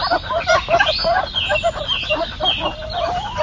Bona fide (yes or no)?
yes